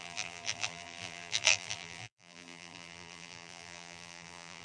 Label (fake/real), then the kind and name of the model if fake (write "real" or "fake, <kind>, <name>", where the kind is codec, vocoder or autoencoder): fake, vocoder, BigVGAN v2